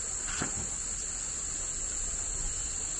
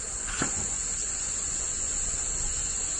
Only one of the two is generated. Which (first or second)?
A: second